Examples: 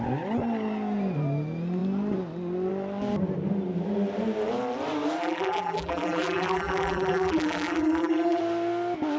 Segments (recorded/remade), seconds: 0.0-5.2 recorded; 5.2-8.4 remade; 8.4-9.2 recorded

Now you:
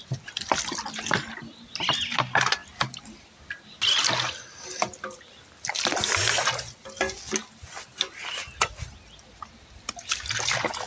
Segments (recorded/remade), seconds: 0.0-2.6 recorded; 2.6-6.4 remade; 6.4-10.9 recorded

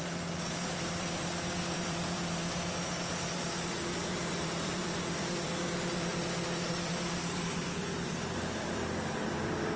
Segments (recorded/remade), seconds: 0.0-2.4 remade; 2.4-3.8 recorded; 3.8-6.1 remade; 6.1-6.7 recorded; 6.7-9.8 remade